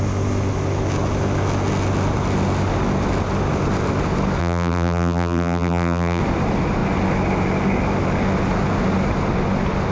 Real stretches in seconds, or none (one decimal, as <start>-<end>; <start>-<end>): 0.0-4.4; 6.2-9.9